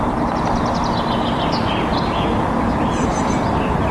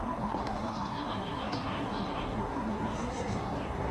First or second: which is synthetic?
second